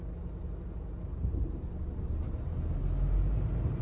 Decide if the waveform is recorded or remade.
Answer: recorded